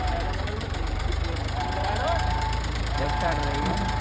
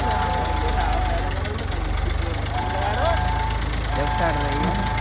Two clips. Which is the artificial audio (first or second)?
first